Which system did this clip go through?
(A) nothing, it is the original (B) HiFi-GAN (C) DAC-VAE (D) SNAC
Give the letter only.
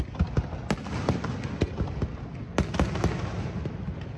A